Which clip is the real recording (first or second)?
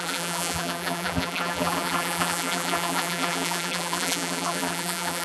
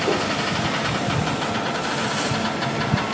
second